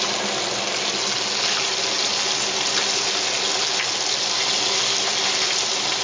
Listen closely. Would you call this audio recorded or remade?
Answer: recorded